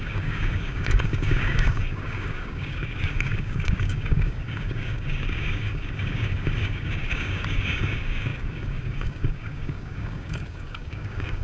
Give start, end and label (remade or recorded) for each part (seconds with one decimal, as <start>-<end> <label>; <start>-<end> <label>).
0.0-11.4 remade